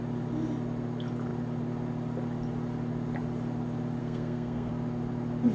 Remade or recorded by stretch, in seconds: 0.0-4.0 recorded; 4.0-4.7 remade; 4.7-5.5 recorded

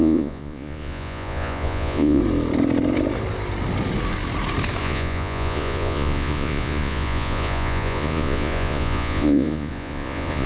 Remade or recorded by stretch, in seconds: 0.0-2.2 remade; 2.2-4.8 recorded; 4.8-10.5 remade

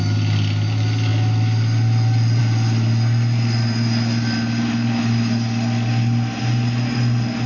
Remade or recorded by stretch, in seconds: 0.0-7.5 recorded

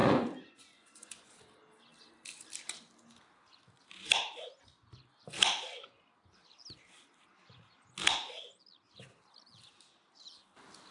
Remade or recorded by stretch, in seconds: 0.0-1.4 remade; 1.4-10.9 recorded

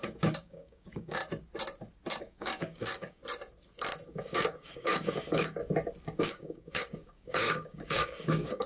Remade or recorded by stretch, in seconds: 0.0-1.2 remade; 1.2-2.2 recorded; 2.2-3.2 remade; 3.2-4.1 recorded; 4.1-5.6 remade; 5.6-6.2 recorded; 6.2-8.7 remade